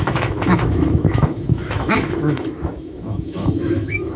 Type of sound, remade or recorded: remade